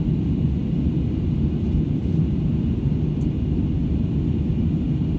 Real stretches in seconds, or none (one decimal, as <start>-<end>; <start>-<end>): 0.0-5.2

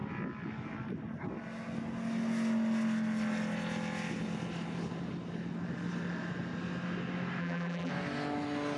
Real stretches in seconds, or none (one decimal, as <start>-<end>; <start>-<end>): 0.0-7.4; 7.9-8.8